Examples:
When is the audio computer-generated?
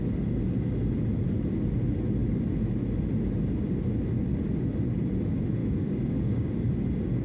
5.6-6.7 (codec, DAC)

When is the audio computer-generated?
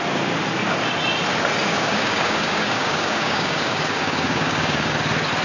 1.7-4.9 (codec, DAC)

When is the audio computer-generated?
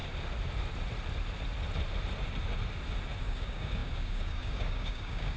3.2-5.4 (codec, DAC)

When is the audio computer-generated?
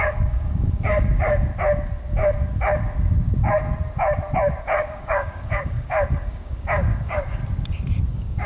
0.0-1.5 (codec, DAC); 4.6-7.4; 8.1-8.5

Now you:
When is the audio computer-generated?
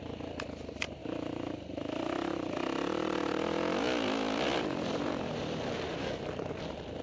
6.0-6.5 (codec, DAC)